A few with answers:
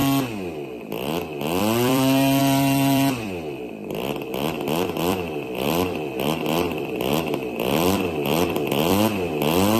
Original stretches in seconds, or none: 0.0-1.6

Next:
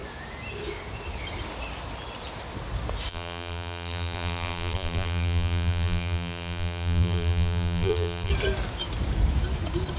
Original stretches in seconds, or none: 0.0-3.1; 8.3-10.0

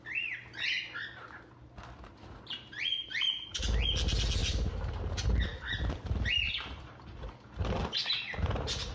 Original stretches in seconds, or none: 0.0-3.0; 3.8-4.4; 5.0-5.5; 7.8-8.9

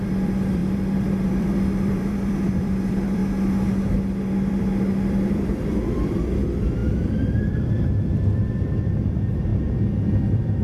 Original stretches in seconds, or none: 3.2-4.5; 9.5-10.1

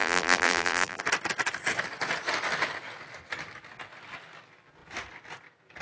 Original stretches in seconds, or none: 1.0-5.8

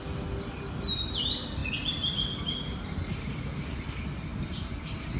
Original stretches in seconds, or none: 0.0-4.3; 4.8-5.2

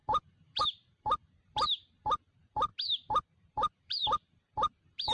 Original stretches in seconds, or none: 2.7-3.5